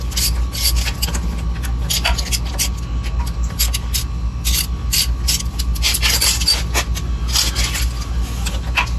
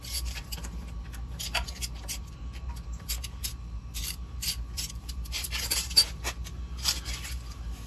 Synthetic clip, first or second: second